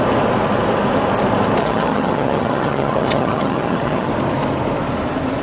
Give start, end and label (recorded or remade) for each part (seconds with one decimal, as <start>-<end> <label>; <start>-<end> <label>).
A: 0.0-1.6 recorded; 1.6-4.1 remade; 4.1-5.4 recorded